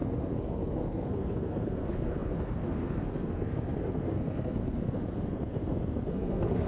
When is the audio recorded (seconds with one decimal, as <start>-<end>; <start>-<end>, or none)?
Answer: none